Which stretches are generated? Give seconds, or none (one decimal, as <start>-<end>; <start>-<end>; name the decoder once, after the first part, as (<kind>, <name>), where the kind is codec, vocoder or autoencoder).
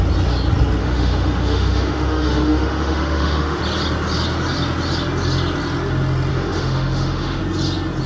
0.8-3.6 (autoencoder, DAC-VAE); 6.3-7.4